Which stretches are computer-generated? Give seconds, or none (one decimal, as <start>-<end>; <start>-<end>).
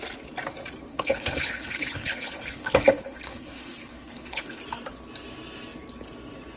0.9-4.6